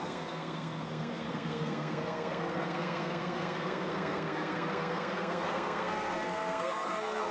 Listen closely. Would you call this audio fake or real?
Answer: fake